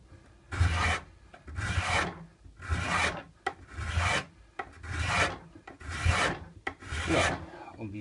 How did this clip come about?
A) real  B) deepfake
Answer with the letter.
A